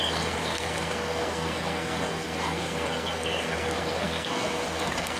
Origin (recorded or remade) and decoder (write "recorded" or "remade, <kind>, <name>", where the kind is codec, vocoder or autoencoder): remade, codec, SNAC